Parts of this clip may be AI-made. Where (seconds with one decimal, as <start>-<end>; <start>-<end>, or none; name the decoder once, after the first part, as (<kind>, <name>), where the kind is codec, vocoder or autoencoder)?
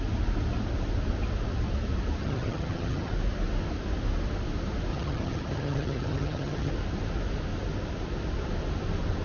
2.2-3.1 (vocoder, HiFi-GAN); 4.9-6.7